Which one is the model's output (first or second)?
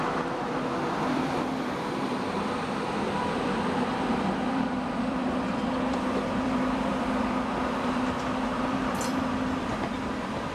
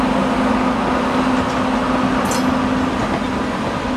first